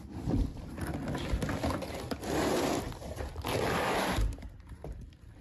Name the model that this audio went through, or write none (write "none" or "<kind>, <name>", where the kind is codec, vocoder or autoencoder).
vocoder, BigVGAN v2